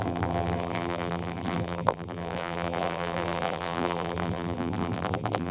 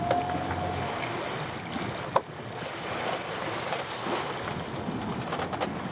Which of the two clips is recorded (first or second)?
second